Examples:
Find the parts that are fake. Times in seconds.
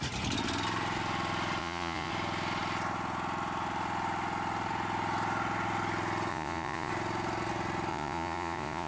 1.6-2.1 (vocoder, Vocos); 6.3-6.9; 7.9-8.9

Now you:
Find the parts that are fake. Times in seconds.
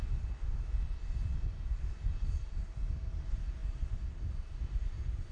none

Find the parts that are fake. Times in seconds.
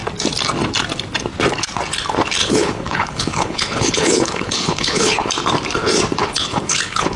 2.4-5.3 (codec, HILCodec); 6.2-7.2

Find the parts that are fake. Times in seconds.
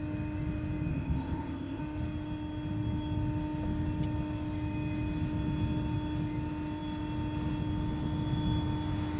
0.9-1.8 (codec, ZipCodec)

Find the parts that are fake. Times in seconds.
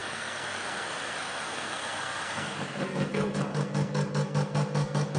0.0-5.2 (codec, SNAC)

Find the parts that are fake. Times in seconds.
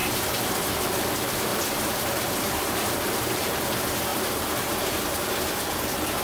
1.5-3.6 (vocoder, BigVGAN v2); 4.1-5.3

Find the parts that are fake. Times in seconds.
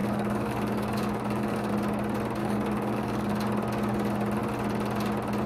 0.0-1.7 (codec, DAC); 2.4-3.3